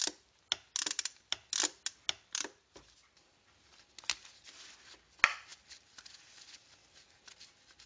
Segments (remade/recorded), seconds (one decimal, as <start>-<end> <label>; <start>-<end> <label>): 0.0-7.9 recorded